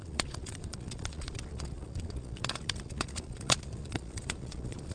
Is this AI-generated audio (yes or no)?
yes